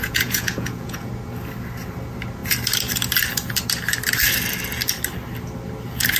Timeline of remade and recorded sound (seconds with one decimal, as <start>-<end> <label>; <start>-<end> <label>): 0.0-1.1 remade; 1.1-6.2 recorded